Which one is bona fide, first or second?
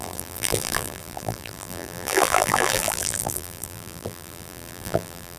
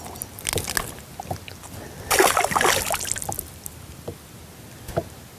second